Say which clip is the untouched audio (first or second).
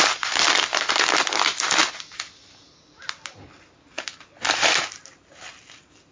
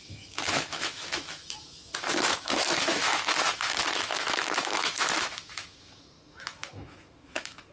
first